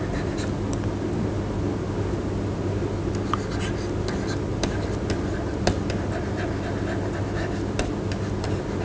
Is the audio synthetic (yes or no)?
no